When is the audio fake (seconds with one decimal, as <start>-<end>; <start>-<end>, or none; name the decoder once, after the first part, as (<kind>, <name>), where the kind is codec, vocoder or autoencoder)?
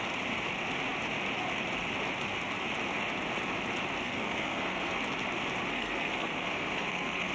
4.0-5.0 (codec, SNAC); 5.7-7.3